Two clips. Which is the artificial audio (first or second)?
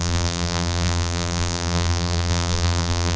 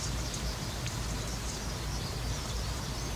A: first